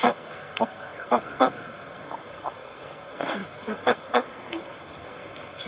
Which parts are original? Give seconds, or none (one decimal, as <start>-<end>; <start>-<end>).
none